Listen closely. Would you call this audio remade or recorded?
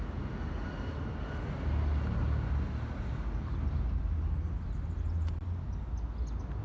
recorded